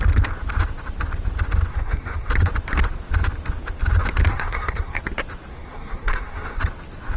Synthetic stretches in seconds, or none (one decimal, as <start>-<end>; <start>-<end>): 1.7-2.3; 4.3-5.0; 5.5-6.6